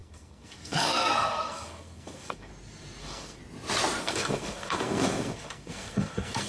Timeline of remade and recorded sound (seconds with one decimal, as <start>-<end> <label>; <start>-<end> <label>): 0.0-2.5 remade; 2.5-3.0 recorded; 3.0-3.4 remade; 3.4-4.0 recorded; 4.0-6.5 remade